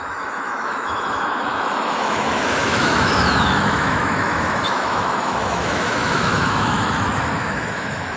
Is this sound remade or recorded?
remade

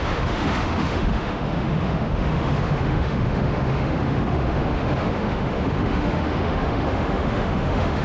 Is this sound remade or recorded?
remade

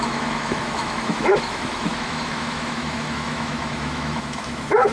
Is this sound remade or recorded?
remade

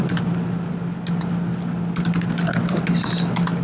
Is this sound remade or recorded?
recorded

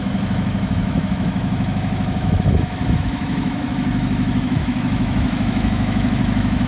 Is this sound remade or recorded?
remade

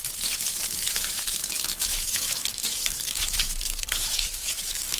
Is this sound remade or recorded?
remade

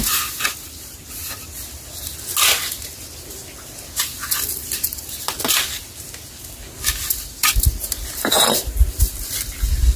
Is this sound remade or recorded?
recorded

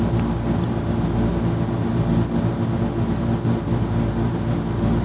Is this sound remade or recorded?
recorded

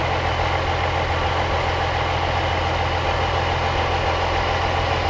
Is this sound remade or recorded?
recorded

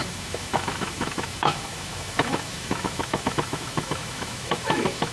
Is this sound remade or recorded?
remade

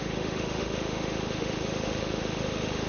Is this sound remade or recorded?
remade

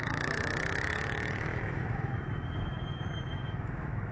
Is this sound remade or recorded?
remade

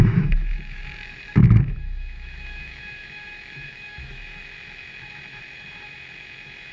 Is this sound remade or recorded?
remade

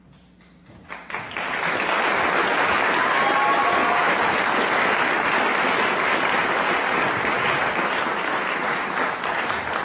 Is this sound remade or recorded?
recorded